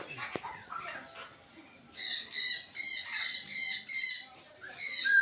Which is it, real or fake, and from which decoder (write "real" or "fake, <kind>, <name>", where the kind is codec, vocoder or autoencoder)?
real